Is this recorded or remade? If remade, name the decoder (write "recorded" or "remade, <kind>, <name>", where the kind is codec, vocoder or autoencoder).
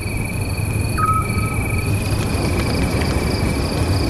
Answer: recorded